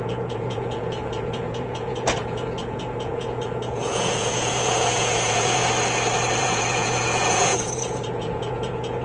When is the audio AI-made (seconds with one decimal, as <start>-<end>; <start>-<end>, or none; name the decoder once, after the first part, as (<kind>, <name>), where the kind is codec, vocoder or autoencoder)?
0.0-5.6 (vocoder, Vocos); 6.4-9.0